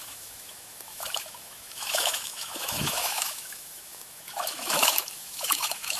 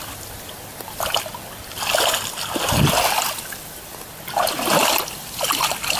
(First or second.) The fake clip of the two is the first